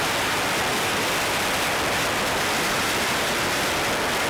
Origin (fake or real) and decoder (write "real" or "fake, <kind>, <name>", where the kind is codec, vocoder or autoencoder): real